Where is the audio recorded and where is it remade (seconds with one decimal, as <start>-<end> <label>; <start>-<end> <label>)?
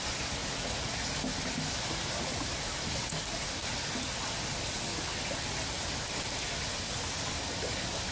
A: 0.0-8.1 recorded